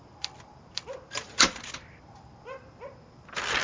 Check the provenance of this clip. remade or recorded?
recorded